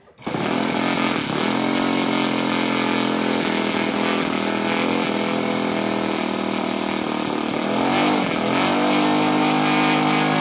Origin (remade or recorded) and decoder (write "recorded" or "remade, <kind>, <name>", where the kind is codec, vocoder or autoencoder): recorded